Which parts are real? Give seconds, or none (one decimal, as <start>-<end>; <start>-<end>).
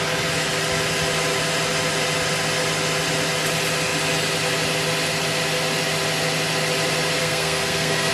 0.0-7.2